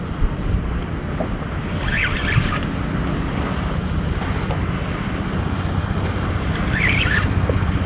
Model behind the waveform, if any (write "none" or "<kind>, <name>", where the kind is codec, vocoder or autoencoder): none